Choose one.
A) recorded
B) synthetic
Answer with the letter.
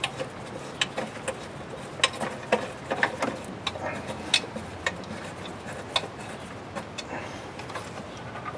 A